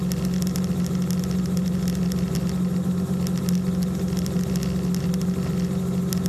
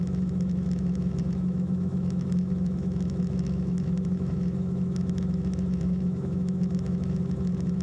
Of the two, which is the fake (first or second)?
second